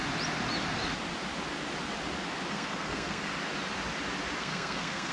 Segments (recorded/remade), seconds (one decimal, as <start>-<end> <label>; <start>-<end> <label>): 0.0-2.5 recorded; 2.5-3.3 remade; 3.3-4.4 recorded; 4.4-5.1 remade

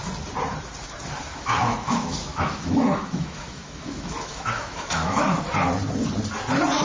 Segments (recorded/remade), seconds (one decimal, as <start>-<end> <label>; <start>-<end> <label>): 0.0-1.3 recorded; 1.3-5.4 remade; 5.4-6.8 recorded

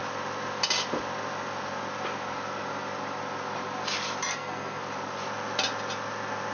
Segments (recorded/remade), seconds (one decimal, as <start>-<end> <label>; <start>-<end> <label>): 0.0-4.3 recorded; 4.3-4.8 remade; 4.8-6.5 recorded

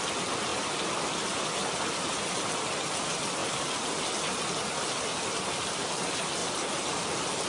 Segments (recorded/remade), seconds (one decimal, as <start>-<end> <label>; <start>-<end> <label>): 0.0-7.5 recorded

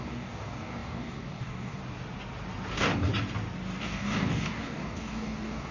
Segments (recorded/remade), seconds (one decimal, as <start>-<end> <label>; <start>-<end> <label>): 0.0-1.8 remade; 1.8-2.7 recorded; 2.7-3.1 remade; 3.1-3.8 recorded; 3.8-5.7 remade